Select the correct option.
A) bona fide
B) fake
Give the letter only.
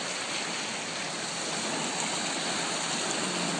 A